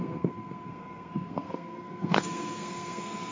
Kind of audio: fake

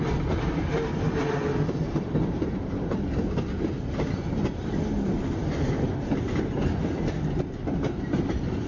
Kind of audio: real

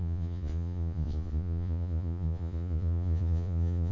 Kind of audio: fake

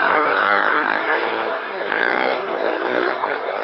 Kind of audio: fake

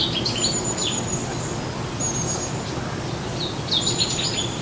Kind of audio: real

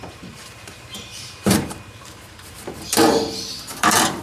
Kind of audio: fake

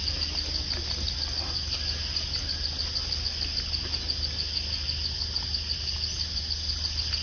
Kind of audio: real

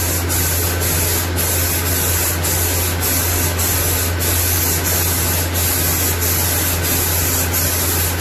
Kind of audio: real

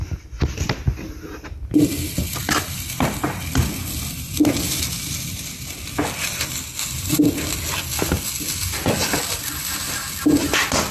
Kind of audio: real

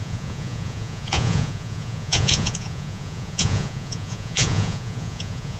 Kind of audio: fake